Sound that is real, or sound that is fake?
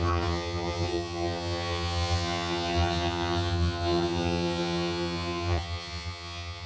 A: fake